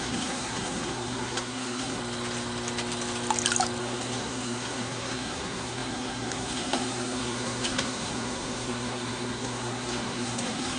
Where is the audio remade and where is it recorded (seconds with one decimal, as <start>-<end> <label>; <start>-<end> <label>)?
0.0-2.0 remade; 2.0-3.8 recorded; 3.8-10.8 remade